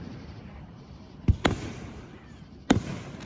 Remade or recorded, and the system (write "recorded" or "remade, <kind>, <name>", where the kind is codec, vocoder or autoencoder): remade, vocoder, BigVGAN v2